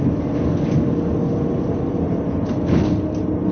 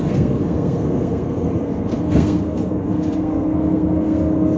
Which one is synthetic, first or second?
second